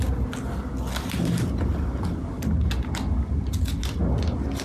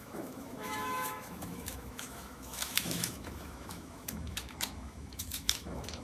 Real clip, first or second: first